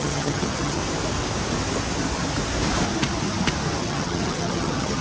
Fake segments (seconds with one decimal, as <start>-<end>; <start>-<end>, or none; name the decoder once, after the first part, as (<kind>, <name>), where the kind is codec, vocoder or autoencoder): 0.0-0.8 (vocoder, HiFi-GAN); 3.8-5.0